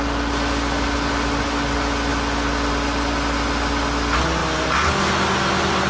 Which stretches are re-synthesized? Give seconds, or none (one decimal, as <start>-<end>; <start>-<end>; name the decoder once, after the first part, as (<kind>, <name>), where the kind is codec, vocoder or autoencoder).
none